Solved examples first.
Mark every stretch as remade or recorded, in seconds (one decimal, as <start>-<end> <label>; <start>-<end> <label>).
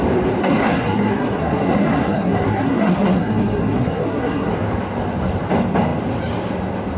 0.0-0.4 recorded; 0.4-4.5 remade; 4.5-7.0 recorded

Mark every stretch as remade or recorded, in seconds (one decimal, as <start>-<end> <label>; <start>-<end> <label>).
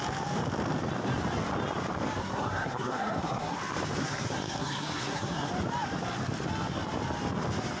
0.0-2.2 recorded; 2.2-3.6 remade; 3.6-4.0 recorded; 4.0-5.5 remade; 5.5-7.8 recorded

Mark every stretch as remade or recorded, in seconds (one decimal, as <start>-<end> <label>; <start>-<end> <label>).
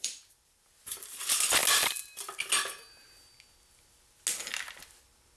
0.0-0.7 remade; 0.7-5.4 recorded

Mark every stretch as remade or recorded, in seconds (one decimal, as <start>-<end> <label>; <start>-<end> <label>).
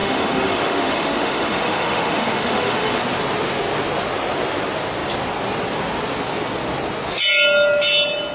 0.0-3.0 remade; 3.0-8.3 recorded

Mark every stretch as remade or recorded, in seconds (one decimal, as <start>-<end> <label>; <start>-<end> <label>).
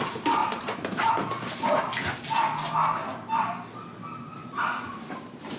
0.0-0.4 recorded; 0.4-1.1 remade; 1.1-3.0 recorded; 3.0-3.5 remade; 3.5-4.4 recorded; 4.4-5.6 remade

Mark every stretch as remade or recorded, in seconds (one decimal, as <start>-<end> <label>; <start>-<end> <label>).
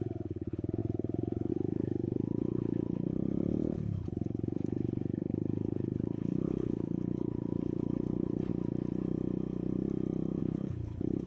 0.0-8.5 remade; 8.5-10.4 recorded; 10.4-11.3 remade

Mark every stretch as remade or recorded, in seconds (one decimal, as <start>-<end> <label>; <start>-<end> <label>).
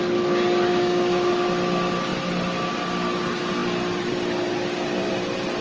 0.0-0.7 recorded; 0.7-1.3 remade; 1.3-5.6 recorded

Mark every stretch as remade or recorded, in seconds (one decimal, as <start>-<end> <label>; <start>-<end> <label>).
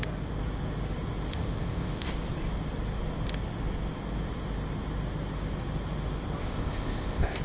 0.0-1.3 recorded; 1.3-2.1 remade; 2.1-6.4 recorded; 6.4-7.4 remade